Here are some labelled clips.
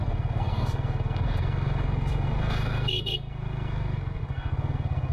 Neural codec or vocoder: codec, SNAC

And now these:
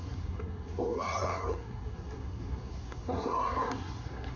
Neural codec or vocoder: codec, SNAC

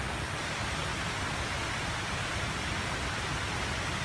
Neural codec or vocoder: none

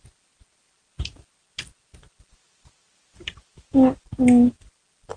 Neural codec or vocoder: none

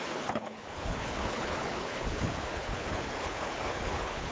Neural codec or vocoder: codec, HILCodec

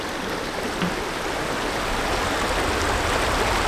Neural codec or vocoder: none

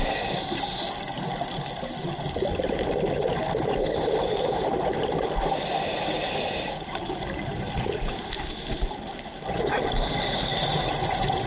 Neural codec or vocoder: none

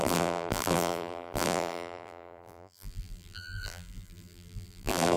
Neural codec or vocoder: vocoder, BigVGAN v2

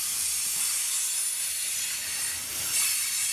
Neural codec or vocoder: none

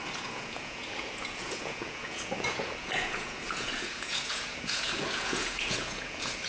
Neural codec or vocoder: vocoder, Vocos